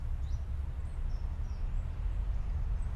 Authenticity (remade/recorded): recorded